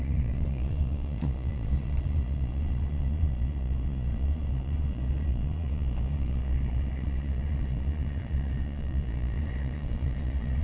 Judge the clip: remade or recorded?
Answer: remade